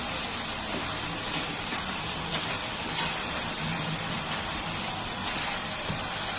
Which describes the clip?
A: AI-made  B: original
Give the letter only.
A